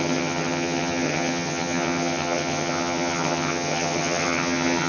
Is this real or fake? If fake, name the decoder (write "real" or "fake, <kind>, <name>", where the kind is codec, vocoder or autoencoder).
fake, vocoder, HiFi-GAN